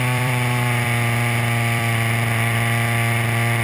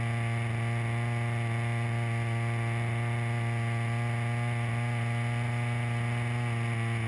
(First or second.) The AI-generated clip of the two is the first